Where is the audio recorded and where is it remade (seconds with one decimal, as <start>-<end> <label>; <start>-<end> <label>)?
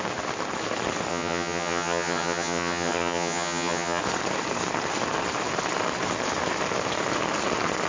0.0-1.1 recorded; 1.1-4.0 remade; 4.0-7.9 recorded